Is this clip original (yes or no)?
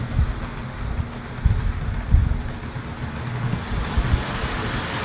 yes